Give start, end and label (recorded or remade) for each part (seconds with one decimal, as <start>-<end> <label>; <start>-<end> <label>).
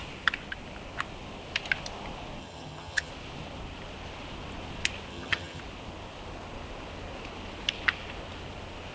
0.0-2.4 recorded; 2.4-3.1 remade; 3.1-5.1 recorded; 5.1-5.6 remade; 5.6-8.9 recorded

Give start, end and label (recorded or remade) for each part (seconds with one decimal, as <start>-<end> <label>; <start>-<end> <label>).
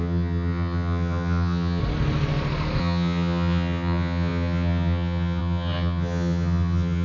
0.0-1.8 remade; 1.8-2.8 recorded; 2.8-7.0 remade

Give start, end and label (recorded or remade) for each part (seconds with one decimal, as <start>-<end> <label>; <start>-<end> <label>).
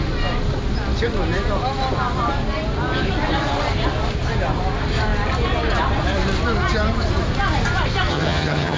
0.0-8.1 recorded; 8.1-8.8 remade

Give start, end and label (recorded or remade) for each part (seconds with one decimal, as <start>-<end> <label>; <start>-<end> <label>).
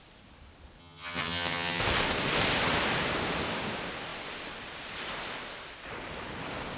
0.0-0.8 recorded; 0.8-1.8 remade; 1.8-6.8 recorded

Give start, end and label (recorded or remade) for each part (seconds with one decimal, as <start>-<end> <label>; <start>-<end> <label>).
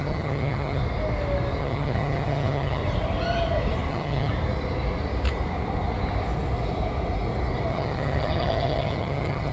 0.0-0.8 remade; 0.8-1.6 recorded; 1.6-2.8 remade; 2.8-3.9 recorded; 3.9-4.3 remade; 4.3-7.7 recorded; 7.7-9.5 remade